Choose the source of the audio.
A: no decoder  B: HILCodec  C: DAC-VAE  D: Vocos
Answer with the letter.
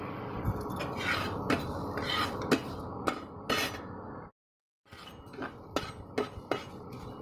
A